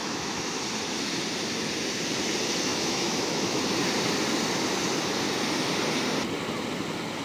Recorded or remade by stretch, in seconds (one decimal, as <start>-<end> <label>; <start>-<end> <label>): 0.0-0.6 remade; 0.6-2.7 recorded; 2.7-3.6 remade; 3.6-7.2 recorded

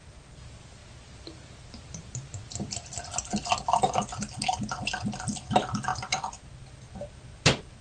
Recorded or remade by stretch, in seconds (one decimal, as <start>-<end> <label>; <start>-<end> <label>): 0.0-7.8 recorded

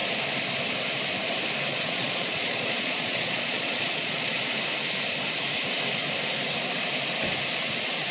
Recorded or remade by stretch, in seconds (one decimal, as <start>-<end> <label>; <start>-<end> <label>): 0.0-1.7 recorded; 1.7-4.3 remade; 4.3-8.1 recorded

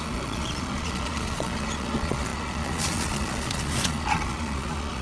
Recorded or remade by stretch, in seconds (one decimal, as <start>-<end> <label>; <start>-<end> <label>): 0.0-5.0 remade

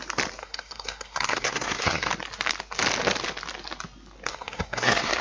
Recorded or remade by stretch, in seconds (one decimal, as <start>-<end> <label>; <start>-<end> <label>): 0.0-0.4 recorded; 0.4-2.1 remade; 2.1-4.3 recorded; 4.3-5.2 remade

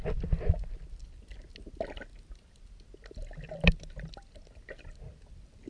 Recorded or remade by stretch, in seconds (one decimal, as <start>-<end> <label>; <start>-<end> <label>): 0.0-5.7 recorded

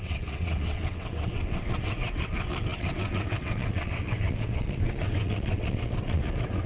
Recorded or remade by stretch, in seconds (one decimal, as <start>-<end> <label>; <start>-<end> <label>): 0.0-6.7 remade